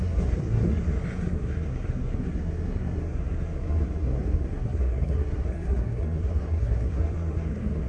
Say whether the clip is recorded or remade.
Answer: remade